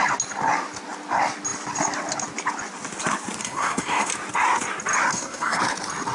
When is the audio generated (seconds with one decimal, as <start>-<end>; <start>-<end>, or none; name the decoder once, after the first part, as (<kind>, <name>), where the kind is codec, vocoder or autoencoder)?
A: 3.4-4.1 (codec, SNAC); 5.1-5.6